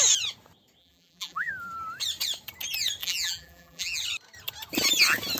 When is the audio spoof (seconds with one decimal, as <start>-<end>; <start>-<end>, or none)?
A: 0.8-1.5; 3.0-4.0